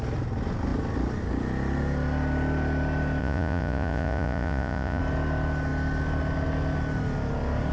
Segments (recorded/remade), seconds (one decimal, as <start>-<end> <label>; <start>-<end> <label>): 0.0-3.2 recorded; 3.2-5.0 remade; 5.0-7.7 recorded